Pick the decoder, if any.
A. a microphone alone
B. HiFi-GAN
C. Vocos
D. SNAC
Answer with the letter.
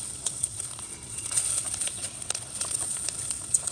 C